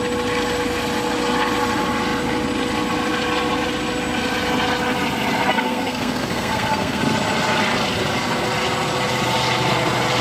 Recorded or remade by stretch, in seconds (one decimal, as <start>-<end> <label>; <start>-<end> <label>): 0.0-5.5 recorded; 5.5-7.0 remade; 7.0-10.2 recorded